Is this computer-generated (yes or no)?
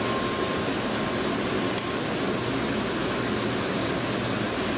no